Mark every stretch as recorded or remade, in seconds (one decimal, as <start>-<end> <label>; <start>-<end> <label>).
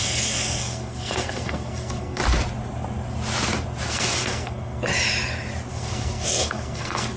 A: 0.0-2.2 remade; 2.2-3.9 recorded; 3.9-4.9 remade; 4.9-5.7 recorded; 5.7-7.2 remade